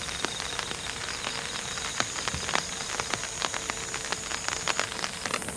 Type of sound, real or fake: real